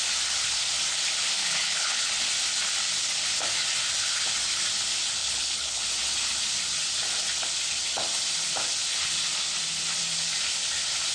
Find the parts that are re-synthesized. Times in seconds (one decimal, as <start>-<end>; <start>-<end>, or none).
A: 1.4-2.1; 5.2-5.8